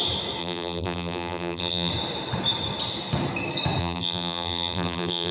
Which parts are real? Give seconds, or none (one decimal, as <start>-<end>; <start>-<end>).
0.0-0.4; 1.9-3.8